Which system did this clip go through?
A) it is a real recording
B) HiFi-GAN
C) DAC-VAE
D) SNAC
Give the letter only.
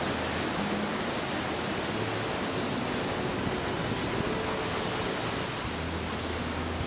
A